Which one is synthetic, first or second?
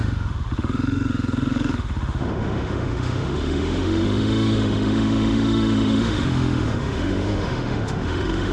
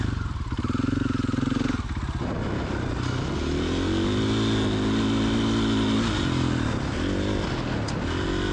first